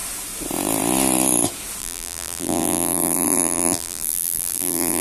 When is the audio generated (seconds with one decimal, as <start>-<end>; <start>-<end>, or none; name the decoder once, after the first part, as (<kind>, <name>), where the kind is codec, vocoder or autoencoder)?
1.8-5.0 (vocoder, BigVGAN v2)